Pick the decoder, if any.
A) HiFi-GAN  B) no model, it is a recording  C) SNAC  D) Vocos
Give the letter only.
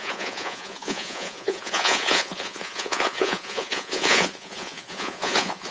D